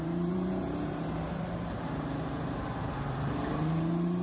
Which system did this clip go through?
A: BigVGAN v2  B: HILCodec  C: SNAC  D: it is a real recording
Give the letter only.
A